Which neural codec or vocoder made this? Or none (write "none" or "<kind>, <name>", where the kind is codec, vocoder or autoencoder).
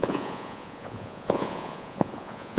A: vocoder, Vocos